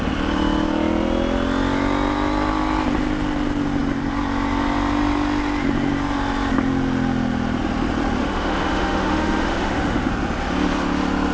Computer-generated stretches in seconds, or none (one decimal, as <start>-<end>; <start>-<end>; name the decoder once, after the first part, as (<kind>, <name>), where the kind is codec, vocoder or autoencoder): 8.2-10.1 (autoencoder, DAC-VAE)